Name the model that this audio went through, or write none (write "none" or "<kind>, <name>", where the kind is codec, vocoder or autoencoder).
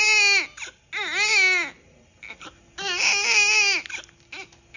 none